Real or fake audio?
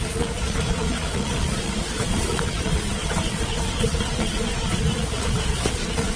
fake